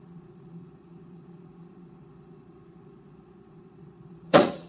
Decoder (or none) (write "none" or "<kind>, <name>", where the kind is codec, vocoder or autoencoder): vocoder, Vocos